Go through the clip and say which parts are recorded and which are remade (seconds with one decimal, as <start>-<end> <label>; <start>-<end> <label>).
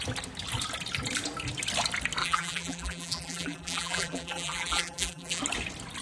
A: 0.0-2.2 recorded; 2.2-5.4 remade; 5.4-6.0 recorded